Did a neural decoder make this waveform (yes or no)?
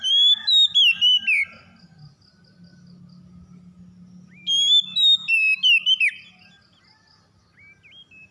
no